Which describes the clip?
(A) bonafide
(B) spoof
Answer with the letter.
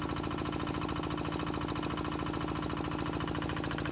A